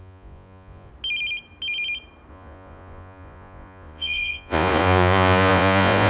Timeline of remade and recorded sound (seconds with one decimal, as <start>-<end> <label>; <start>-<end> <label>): 0.0-0.9 remade; 0.9-2.3 recorded; 2.3-6.1 remade